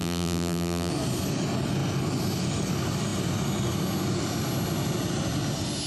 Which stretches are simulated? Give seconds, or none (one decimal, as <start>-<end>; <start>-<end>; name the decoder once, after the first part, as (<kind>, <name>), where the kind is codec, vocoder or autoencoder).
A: 0.0-0.9 (vocoder, BigVGAN v2)